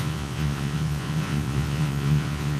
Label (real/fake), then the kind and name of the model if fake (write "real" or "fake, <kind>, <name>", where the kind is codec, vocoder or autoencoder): fake, vocoder, Vocos